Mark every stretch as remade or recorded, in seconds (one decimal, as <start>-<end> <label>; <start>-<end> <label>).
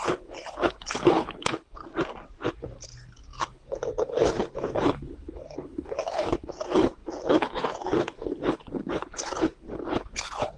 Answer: 0.0-1.8 remade; 1.8-2.5 recorded; 2.5-10.6 remade